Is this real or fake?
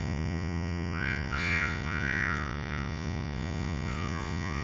fake